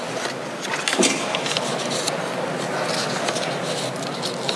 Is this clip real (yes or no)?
yes